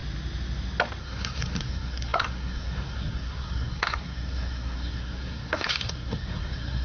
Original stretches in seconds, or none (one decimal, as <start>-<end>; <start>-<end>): 0.0-1.0